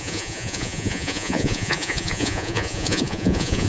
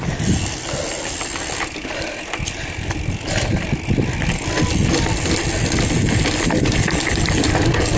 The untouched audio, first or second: second